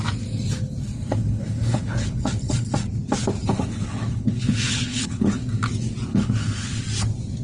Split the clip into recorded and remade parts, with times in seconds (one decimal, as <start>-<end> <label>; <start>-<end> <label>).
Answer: 0.0-0.8 recorded; 0.8-2.7 remade; 2.7-3.5 recorded; 3.5-5.3 remade; 5.3-6.1 recorded; 6.1-6.8 remade; 6.8-7.4 recorded